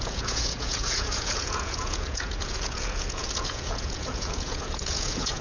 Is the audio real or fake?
fake